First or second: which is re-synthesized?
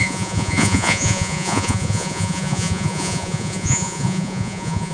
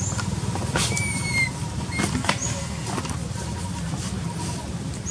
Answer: first